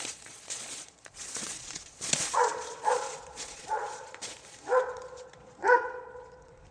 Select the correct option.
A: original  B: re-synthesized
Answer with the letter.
B